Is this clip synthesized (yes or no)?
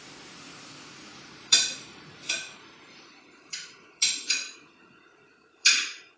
yes